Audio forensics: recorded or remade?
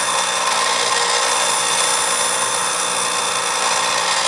recorded